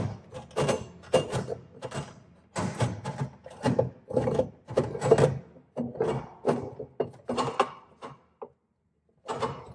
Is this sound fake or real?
real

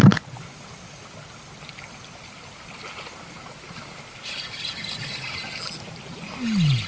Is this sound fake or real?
real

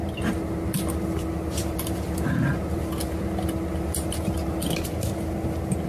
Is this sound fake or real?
real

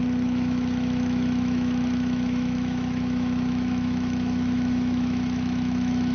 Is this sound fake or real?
fake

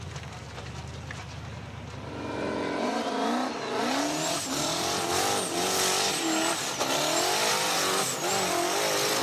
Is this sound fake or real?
real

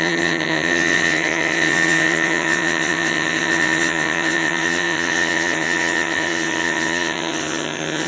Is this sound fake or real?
fake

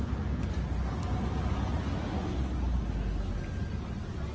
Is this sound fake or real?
real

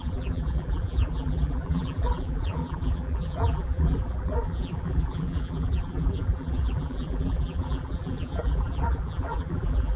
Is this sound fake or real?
fake